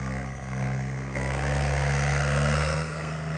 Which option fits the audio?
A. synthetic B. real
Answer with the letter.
A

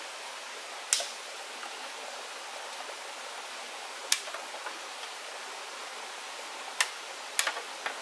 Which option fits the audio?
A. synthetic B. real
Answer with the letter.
B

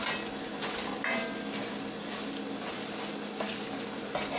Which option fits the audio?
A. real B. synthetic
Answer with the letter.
A